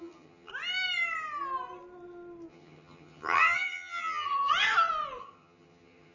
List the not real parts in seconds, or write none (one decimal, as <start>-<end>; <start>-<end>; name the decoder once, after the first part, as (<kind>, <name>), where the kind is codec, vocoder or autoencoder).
0.0-0.5 (vocoder, HiFi-GAN); 2.5-4.5; 5.2-6.1